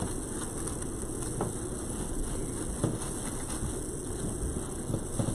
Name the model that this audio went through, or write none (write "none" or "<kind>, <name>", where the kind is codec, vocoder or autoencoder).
none